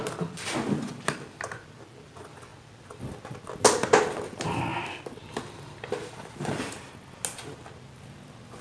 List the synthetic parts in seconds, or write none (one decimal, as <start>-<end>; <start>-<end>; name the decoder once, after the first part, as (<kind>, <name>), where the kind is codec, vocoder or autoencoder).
none